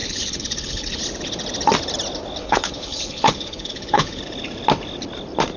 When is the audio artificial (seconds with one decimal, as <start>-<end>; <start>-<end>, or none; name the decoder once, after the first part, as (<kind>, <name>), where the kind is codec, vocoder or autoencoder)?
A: 0.0-1.0 (codec, HILCodec); 2.4-4.2